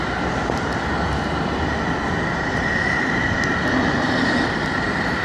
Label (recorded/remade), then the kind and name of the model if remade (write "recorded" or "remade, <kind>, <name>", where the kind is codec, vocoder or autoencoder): recorded